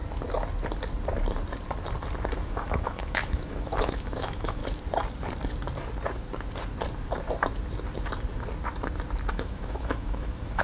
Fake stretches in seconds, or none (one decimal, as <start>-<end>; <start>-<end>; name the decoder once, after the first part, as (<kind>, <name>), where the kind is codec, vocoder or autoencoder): 2.4-4.6 (autoencoder, DAC-VAE); 9.3-10.6